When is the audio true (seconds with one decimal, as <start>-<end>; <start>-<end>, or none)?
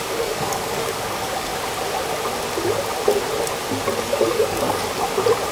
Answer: 1.5-3.9; 4.8-5.5